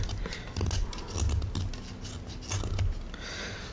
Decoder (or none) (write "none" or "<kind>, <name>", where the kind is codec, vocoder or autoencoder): none